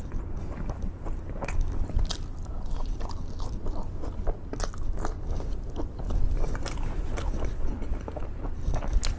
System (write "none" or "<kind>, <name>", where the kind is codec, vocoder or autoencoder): none